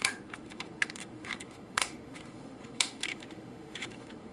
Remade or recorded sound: remade